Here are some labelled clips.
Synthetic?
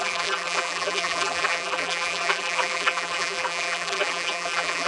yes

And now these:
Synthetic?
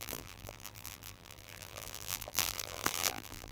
yes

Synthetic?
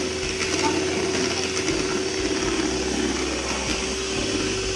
no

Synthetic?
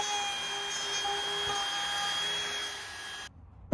no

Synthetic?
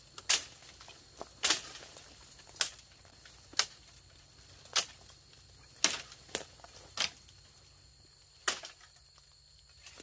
no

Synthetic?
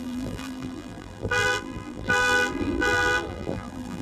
yes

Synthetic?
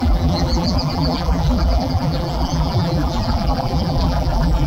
yes